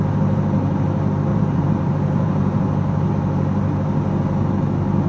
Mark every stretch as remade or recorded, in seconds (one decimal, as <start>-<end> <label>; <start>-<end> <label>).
0.0-1.3 recorded; 1.3-3.1 remade; 3.1-5.1 recorded